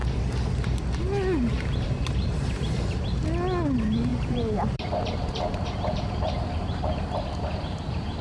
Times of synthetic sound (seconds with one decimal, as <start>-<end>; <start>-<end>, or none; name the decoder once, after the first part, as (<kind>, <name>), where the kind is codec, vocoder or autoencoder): 1.5-3.2 (vocoder, BigVGAN v2); 4.1-7.2